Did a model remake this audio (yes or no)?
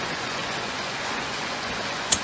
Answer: yes